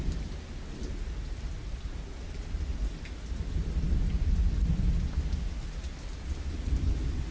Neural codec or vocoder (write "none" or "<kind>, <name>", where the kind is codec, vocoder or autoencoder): none